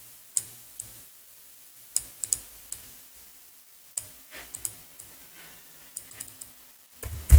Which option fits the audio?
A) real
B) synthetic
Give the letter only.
A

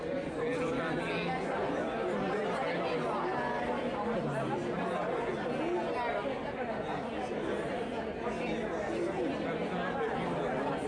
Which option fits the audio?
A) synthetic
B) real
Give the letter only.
B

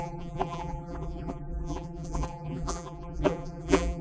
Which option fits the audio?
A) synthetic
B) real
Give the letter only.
A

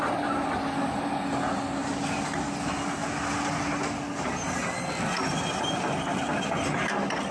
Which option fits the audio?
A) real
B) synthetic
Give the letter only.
A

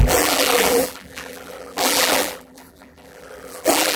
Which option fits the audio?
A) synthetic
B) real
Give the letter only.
A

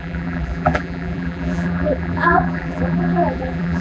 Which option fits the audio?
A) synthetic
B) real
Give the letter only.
A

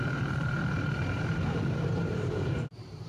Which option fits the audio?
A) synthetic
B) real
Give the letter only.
A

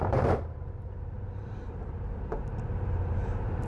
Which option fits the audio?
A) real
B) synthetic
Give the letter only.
B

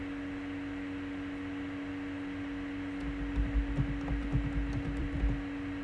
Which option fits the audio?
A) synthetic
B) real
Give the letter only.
B